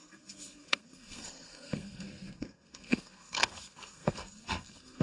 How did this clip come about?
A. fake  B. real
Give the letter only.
A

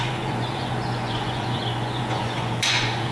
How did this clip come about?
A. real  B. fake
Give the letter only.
B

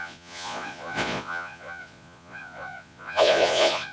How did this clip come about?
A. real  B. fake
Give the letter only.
B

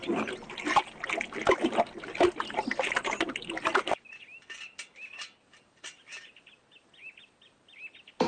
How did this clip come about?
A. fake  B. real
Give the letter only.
B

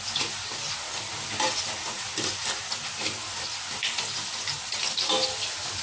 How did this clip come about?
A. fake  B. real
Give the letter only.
B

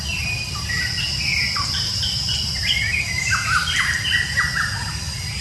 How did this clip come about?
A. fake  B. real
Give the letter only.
B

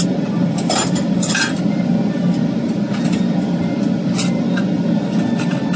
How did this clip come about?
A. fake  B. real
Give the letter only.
B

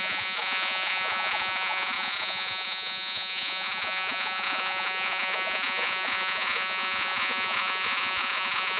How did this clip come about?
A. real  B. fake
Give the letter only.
B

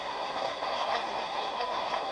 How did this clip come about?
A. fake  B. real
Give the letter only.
A